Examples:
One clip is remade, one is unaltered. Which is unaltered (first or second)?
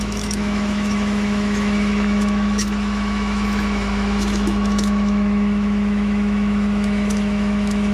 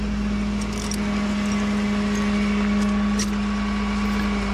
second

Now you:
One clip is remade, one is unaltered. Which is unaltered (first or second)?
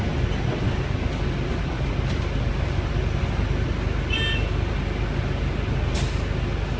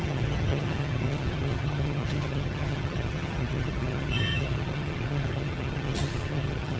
first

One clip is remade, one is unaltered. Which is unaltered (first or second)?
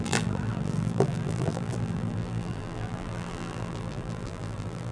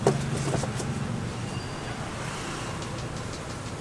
second